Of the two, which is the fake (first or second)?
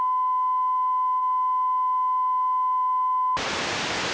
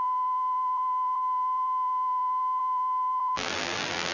second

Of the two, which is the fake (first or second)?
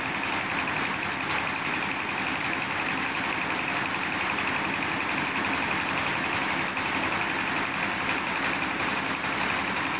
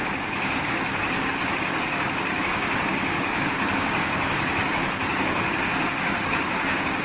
second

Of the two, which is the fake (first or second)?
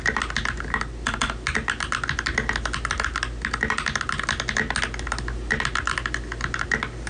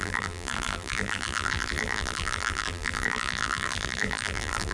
second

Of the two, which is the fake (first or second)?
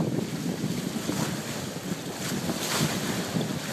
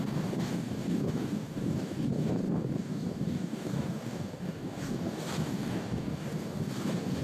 second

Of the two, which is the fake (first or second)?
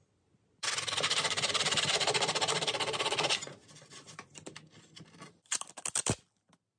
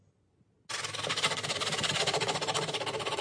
first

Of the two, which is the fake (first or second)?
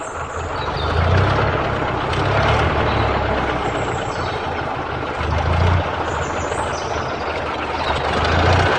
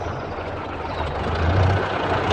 second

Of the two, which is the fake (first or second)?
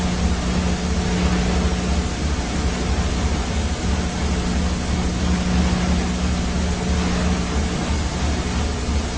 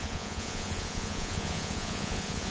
second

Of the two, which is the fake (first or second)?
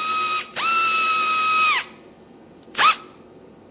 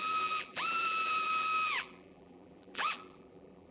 second